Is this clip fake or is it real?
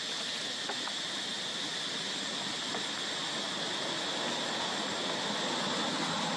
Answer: real